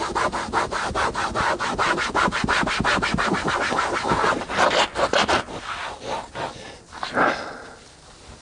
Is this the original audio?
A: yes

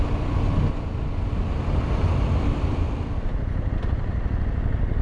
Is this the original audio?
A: yes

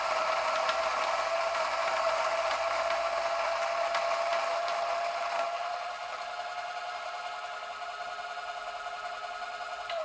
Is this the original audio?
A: yes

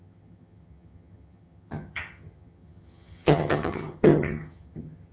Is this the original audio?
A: no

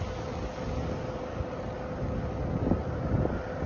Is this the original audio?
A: yes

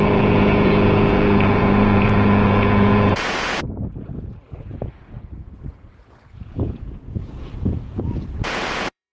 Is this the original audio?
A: no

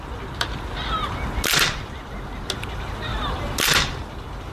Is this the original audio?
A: yes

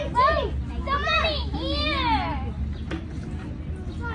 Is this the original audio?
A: yes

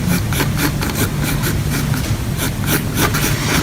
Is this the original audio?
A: yes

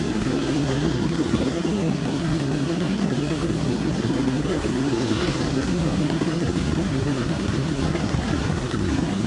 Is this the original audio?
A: no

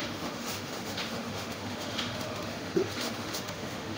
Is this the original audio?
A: no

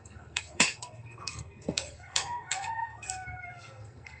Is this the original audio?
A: no